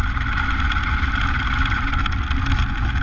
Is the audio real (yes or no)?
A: yes